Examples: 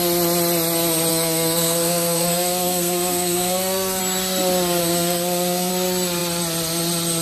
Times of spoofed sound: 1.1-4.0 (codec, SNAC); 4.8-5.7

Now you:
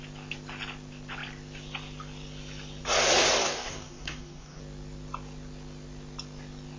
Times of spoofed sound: 3.4-4.6 (codec, DAC)

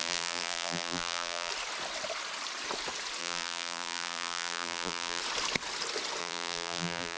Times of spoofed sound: 0.0-1.5 (vocoder, BigVGAN v2); 3.2-5.2; 6.2-7.2